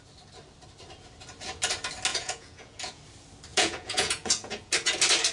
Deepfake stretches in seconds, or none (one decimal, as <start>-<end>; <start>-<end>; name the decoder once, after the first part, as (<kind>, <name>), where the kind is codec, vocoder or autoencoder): 2.1-3.0 (vocoder, Vocos); 3.5-4.7